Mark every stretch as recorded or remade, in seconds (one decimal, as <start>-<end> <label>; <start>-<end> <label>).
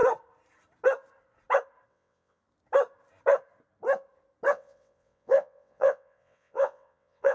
0.0-1.9 recorded; 1.9-2.4 remade; 2.4-4.5 recorded; 4.5-7.3 remade